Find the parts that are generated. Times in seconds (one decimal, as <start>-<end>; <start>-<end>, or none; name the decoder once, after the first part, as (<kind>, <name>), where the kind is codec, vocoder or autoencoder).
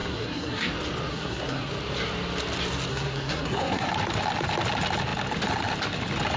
0.0-0.7 (codec, SNAC); 1.1-1.7; 2.9-3.9